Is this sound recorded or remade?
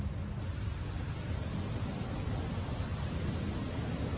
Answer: recorded